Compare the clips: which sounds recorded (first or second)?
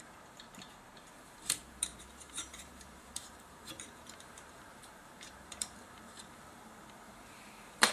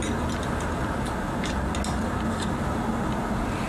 second